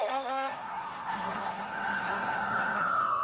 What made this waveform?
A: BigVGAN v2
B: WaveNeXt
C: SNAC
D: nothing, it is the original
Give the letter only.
C